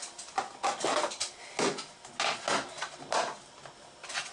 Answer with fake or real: real